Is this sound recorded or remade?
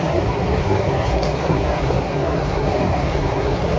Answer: remade